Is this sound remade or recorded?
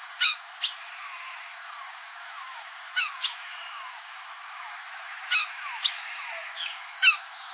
remade